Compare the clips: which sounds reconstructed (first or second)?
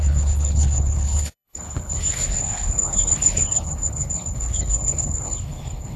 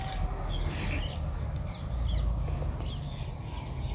first